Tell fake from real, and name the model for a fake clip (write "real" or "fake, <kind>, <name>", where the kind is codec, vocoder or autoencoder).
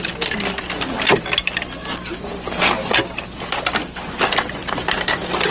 real